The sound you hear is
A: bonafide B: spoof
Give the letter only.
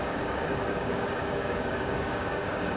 B